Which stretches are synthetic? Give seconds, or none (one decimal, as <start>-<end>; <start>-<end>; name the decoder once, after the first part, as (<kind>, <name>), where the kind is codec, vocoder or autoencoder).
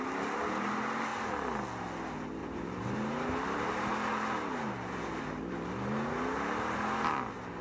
2.4-5.7 (vocoder, BigVGAN v2)